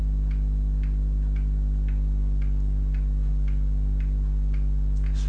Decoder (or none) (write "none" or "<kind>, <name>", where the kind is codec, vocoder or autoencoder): none